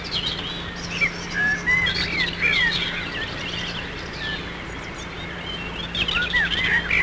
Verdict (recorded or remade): recorded